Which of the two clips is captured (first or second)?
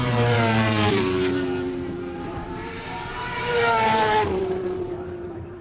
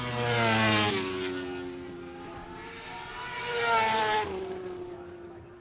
second